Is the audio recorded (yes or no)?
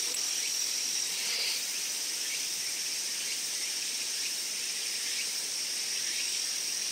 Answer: yes